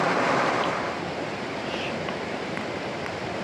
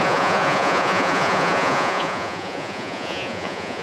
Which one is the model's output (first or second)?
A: second